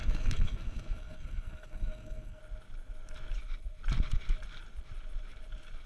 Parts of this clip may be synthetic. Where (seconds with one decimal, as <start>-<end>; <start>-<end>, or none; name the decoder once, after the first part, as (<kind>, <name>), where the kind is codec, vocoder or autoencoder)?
0.0-2.4 (codec, SNAC)